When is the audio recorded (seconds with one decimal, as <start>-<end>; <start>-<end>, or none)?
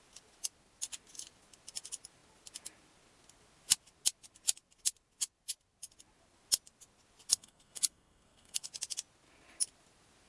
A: 0.0-7.3; 8.7-10.3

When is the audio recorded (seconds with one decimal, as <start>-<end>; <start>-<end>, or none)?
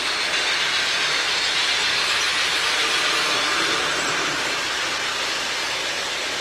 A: 0.0-6.4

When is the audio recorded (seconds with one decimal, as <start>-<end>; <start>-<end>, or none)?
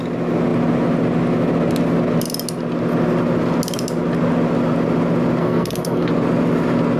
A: 0.0-5.4; 6.1-7.0